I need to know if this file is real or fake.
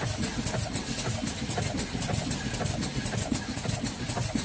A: real